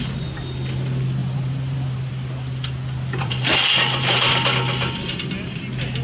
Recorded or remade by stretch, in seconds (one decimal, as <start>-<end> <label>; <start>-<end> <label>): 0.0-1.2 recorded; 1.2-2.1 remade; 2.1-3.2 recorded; 3.2-4.3 remade; 4.3-6.0 recorded